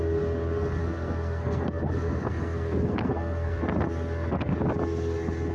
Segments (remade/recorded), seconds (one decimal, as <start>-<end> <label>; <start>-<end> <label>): 0.0-0.8 recorded; 0.8-3.6 remade; 3.6-5.5 recorded